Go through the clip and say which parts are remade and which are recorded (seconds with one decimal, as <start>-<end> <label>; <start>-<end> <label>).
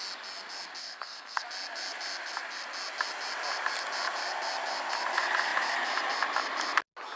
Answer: 0.0-0.8 recorded; 0.8-1.4 remade; 1.4-7.2 recorded